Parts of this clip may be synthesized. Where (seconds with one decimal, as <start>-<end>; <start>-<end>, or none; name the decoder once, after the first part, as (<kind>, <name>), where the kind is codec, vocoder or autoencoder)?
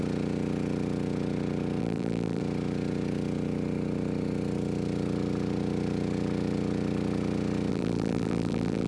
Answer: 1.8-2.4 (vocoder, BigVGAN v2); 7.7-8.9